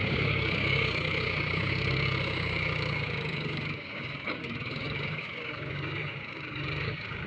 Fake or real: fake